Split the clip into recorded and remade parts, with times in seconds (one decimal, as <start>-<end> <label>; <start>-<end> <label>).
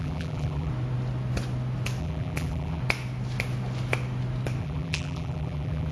0.0-0.7 remade; 0.7-2.0 recorded; 2.0-2.8 remade; 2.8-4.6 recorded; 4.6-5.9 remade